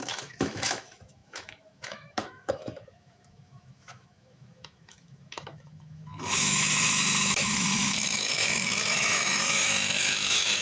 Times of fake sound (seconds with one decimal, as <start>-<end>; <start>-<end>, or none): 0.0-10.6